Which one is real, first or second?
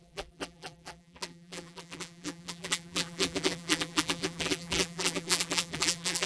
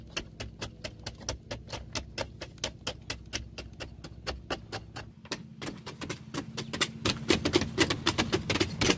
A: second